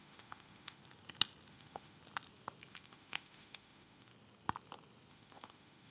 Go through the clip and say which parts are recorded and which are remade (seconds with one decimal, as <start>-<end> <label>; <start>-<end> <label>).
0.0-0.8 remade; 0.8-1.5 recorded; 1.5-2.0 remade; 2.0-2.7 recorded; 2.7-4.1 remade; 4.1-5.1 recorded; 5.1-5.9 remade